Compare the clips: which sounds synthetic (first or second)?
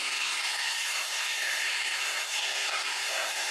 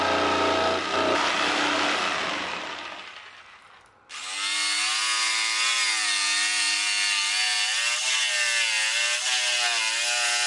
first